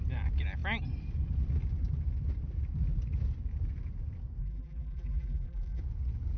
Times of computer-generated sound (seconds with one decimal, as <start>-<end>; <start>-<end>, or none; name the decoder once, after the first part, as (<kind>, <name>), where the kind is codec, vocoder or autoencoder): 4.4-5.8 (vocoder, BigVGAN v2)